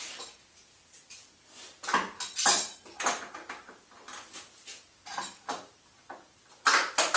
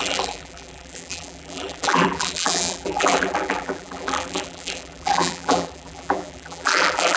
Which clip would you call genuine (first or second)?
first